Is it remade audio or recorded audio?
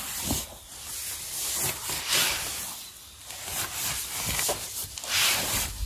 recorded